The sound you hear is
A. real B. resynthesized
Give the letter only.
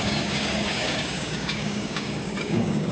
B